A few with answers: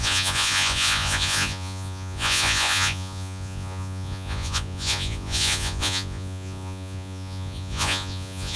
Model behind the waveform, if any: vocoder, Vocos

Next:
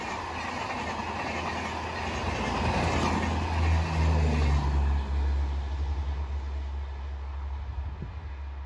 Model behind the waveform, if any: none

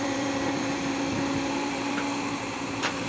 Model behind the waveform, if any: vocoder, BigVGAN v2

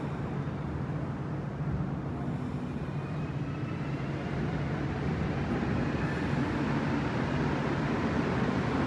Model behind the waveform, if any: none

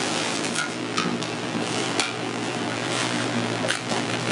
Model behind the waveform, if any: vocoder, BigVGAN v2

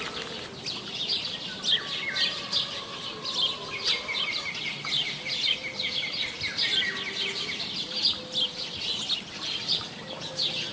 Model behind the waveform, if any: none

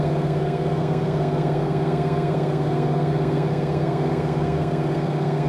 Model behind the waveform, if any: codec, SNAC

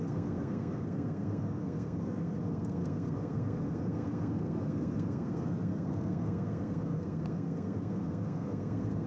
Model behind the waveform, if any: codec, SNAC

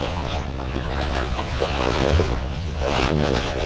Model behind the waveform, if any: vocoder, Vocos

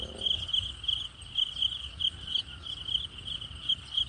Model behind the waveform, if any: none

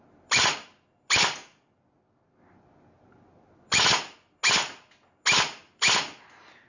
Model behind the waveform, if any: none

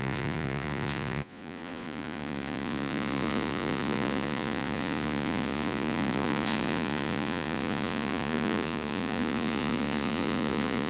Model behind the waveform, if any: vocoder, Vocos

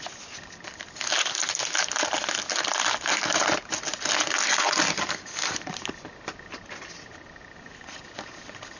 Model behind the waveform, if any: none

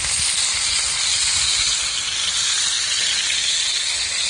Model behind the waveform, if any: none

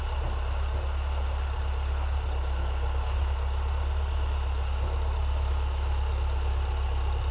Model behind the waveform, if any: none